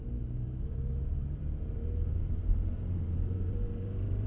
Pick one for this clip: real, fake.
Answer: fake